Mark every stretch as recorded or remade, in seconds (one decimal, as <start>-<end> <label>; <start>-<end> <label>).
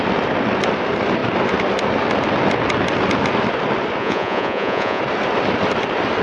0.0-4.0 recorded; 4.0-5.0 remade; 5.0-6.2 recorded